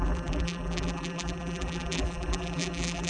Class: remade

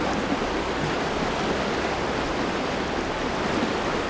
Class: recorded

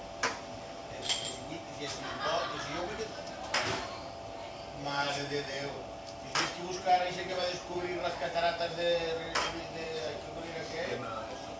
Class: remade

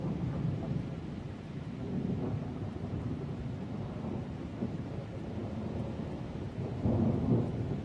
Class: remade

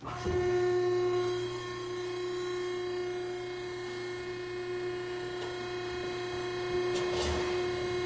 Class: recorded